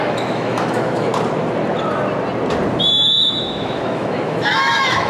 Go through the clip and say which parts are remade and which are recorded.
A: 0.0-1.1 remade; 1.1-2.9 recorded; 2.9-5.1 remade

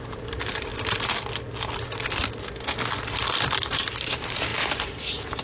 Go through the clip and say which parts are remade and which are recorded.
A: 0.0-0.7 remade; 0.7-3.4 recorded; 3.4-5.4 remade

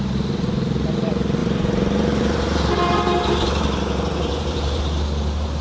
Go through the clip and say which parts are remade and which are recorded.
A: 0.0-1.4 recorded; 1.4-4.8 remade; 4.8-5.6 recorded

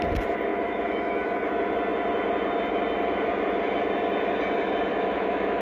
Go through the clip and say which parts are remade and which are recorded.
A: 0.0-0.5 recorded; 0.5-1.5 remade; 1.5-4.9 recorded; 4.9-5.6 remade